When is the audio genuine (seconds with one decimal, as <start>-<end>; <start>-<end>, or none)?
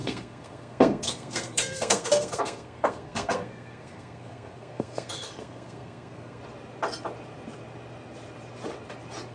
6.4-9.3